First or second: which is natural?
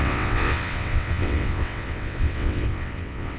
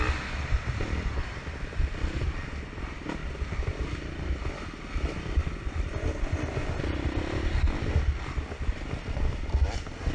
second